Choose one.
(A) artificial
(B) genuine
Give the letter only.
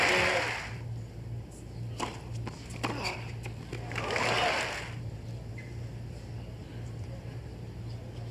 B